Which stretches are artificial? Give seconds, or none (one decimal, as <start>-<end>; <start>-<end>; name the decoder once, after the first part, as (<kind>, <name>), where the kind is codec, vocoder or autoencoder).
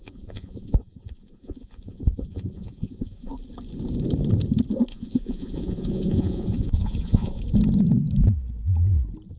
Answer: 0.0-3.3 (vocoder, Vocos); 4.9-7.4